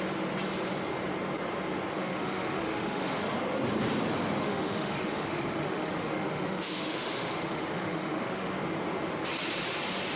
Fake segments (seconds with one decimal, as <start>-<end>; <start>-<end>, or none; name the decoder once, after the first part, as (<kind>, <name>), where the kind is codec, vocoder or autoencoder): 1.9-3.2 (autoencoder, DAC-VAE); 4.4-8.5